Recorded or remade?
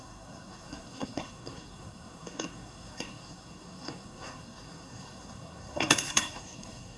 remade